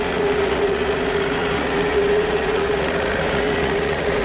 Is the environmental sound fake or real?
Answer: fake